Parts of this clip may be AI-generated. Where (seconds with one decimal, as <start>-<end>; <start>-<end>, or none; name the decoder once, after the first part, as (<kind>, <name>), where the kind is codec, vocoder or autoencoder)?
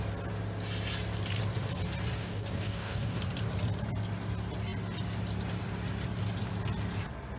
2.2-3.2 (codec, DAC)